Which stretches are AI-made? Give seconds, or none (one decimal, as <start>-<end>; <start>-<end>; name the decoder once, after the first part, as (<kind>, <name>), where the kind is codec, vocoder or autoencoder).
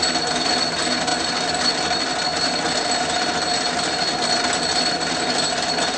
none